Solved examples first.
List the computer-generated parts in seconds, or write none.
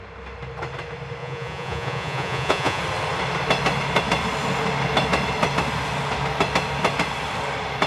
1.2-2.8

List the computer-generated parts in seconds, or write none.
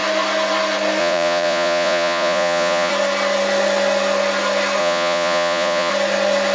1.0-2.9; 4.8-5.9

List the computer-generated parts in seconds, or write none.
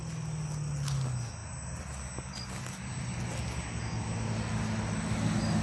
none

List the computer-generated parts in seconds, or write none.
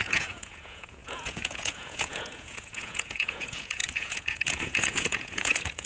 0.0-5.9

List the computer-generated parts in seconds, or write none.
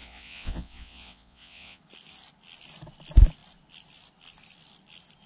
0.0-1.8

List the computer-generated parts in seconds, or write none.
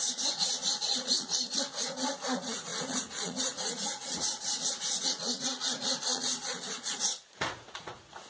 0.0-8.3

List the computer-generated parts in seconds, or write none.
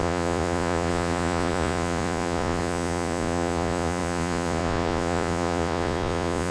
0.0-6.5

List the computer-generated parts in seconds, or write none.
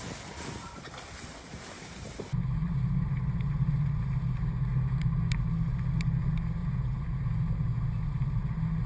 6.6-7.2